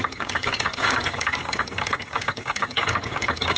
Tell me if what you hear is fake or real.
fake